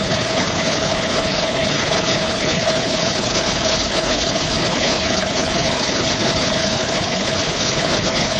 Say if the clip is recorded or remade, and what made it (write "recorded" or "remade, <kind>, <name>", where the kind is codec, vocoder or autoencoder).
remade, codec, HILCodec